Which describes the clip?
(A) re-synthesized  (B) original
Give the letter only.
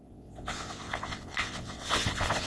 A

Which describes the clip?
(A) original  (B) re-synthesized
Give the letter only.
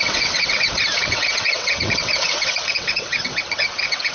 B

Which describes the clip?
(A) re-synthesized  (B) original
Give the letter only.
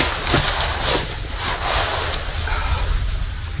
B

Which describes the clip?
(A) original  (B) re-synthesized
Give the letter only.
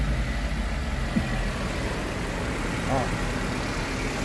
A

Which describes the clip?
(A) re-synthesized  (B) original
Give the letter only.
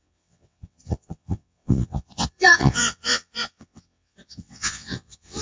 A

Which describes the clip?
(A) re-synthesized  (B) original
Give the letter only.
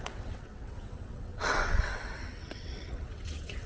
A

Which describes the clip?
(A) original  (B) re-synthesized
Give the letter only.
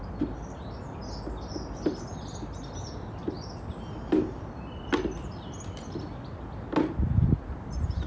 A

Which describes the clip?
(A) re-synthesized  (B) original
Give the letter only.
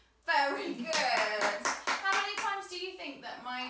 B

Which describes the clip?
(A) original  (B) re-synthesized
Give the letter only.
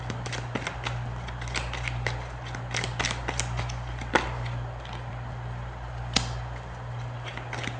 A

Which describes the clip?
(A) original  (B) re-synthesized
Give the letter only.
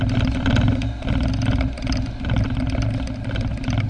A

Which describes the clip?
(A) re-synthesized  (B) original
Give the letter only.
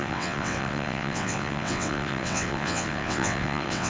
A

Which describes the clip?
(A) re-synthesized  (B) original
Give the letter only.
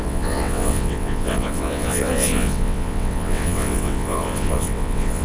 A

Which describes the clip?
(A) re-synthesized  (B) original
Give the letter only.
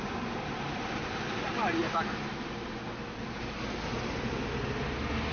B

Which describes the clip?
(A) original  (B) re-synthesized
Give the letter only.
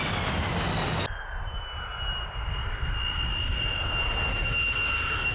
A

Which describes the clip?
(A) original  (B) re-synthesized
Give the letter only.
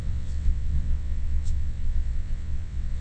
B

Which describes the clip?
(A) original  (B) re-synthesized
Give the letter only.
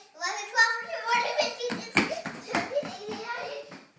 A